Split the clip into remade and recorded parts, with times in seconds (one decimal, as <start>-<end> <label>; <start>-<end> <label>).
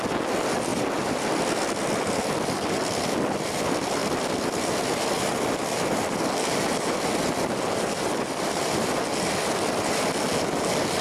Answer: 0.0-11.0 recorded